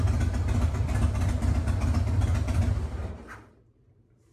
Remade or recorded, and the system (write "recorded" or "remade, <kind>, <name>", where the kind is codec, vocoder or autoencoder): remade, vocoder, BigVGAN v2